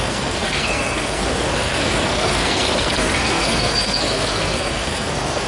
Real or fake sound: fake